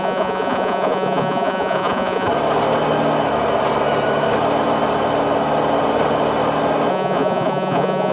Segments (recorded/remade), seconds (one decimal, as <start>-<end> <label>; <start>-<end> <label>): 0.0-2.3 remade; 2.3-6.9 recorded; 6.9-8.1 remade